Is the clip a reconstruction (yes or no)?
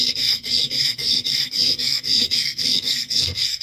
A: yes